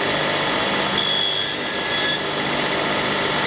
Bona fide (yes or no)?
yes